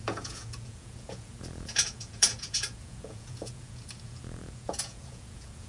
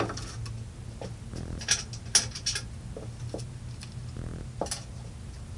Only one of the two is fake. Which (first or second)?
first